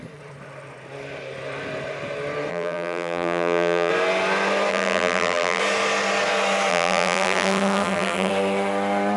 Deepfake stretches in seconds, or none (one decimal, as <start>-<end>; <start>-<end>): 2.5-3.9; 4.7-5.6; 6.7-8.3